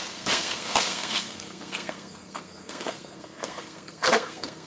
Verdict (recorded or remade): remade